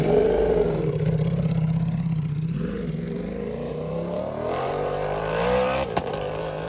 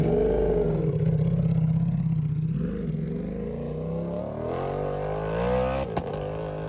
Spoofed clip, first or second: first